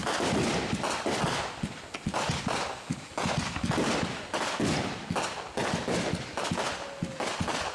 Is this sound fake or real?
real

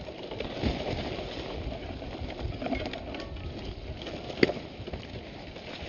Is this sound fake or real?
real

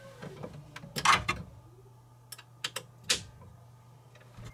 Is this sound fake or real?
real